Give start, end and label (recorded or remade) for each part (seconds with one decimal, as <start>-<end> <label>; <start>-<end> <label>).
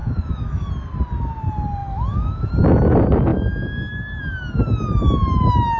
0.0-0.7 remade; 0.7-1.8 recorded; 1.8-2.5 remade; 2.5-5.8 recorded